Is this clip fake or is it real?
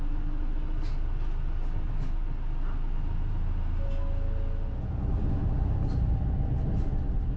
real